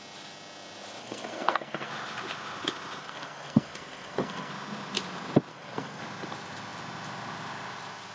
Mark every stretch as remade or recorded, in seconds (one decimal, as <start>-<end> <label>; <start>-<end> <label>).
0.0-1.0 recorded; 1.0-1.9 remade; 1.9-3.0 recorded; 3.0-4.5 remade; 4.5-5.5 recorded; 5.5-6.0 remade; 6.0-8.1 recorded